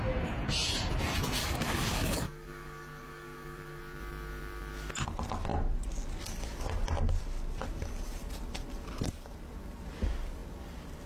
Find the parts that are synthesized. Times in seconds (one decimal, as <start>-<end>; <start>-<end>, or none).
1.4-3.8